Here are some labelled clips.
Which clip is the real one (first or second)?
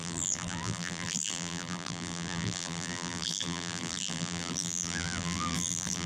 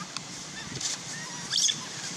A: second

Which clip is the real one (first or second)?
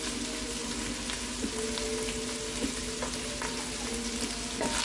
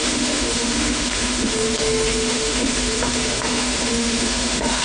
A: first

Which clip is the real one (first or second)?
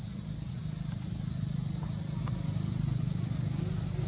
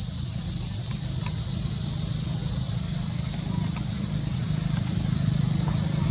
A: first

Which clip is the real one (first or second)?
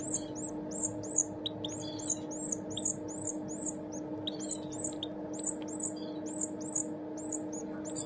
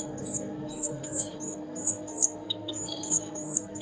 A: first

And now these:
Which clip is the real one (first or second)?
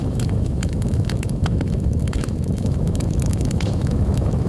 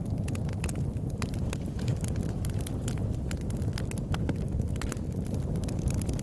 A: second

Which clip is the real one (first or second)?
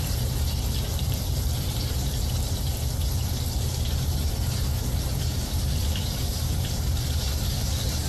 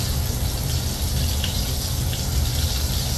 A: second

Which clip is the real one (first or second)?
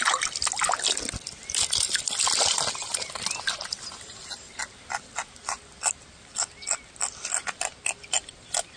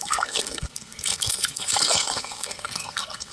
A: first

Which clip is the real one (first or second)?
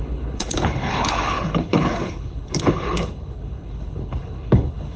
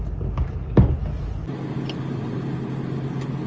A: second